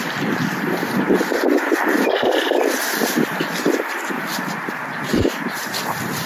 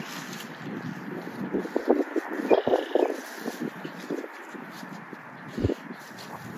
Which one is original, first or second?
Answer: second